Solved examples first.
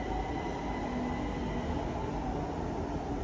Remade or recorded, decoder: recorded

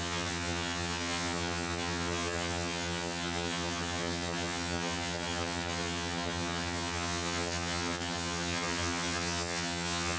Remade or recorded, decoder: remade, vocoder, HiFi-GAN